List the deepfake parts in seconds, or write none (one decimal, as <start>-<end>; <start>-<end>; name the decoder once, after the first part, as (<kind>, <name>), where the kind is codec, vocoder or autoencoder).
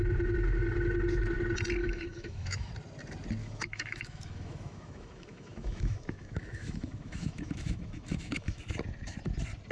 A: 1.8-2.7 (autoencoder, DAC-VAE); 3.4-8.6